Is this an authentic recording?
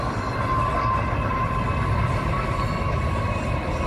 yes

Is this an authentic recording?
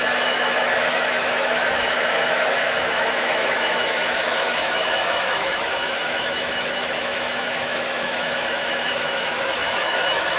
no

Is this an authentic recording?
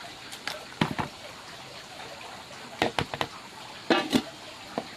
yes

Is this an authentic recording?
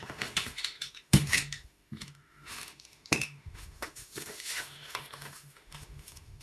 no